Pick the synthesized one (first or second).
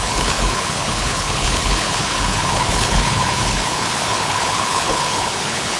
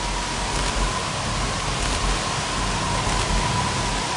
first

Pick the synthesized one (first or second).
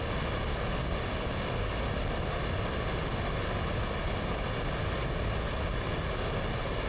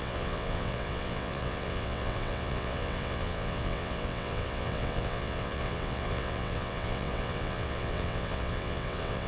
second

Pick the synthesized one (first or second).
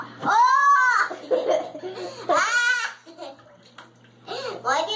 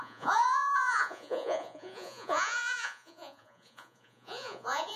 second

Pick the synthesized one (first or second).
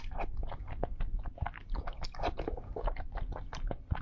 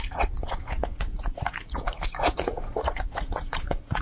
second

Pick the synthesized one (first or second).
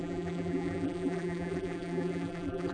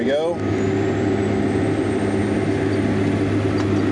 first